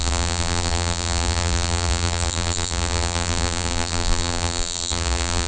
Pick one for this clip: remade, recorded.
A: remade